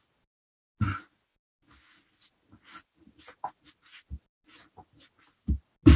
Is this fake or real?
real